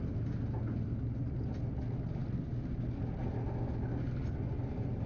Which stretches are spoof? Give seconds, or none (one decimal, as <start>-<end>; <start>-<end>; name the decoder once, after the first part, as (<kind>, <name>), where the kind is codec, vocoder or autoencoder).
none